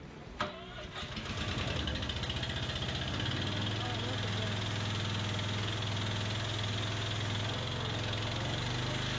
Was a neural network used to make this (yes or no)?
no